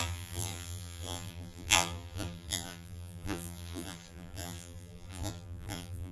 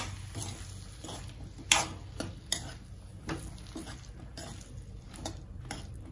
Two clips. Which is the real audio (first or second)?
second